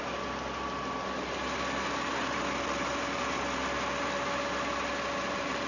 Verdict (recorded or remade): recorded